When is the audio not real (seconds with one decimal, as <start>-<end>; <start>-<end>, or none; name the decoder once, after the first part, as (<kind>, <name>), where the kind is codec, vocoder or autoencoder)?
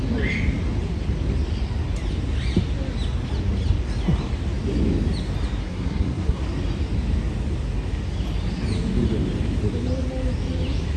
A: 5.6-6.4 (codec, SNAC)